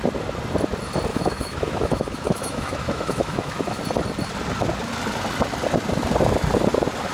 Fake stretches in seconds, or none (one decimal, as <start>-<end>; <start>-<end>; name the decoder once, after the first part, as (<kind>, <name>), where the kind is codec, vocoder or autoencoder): 1.1-3.8 (autoencoder, DAC-VAE)